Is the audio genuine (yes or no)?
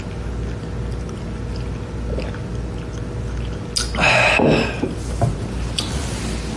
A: yes